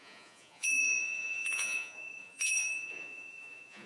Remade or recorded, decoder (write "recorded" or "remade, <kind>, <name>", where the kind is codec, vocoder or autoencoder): remade, vocoder, Vocos